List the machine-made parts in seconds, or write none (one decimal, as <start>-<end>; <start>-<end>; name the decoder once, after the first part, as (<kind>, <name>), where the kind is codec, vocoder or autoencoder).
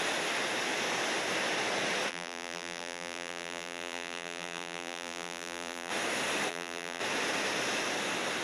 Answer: 2.1-5.9 (vocoder, BigVGAN v2); 6.5-7.0